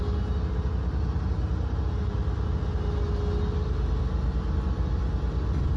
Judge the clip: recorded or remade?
recorded